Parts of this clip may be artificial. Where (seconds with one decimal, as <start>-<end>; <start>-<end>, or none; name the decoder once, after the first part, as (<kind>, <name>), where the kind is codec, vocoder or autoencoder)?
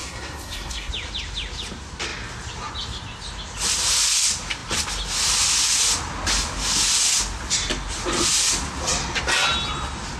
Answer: 0.0-0.9 (codec, SNAC)